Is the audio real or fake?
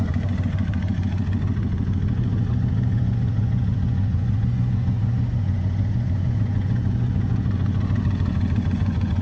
fake